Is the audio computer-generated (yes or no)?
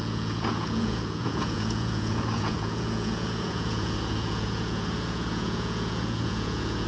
yes